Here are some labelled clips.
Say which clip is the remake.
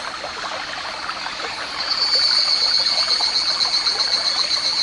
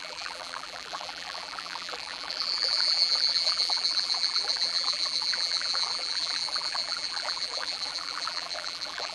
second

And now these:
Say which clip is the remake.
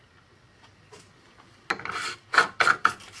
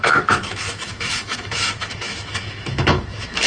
second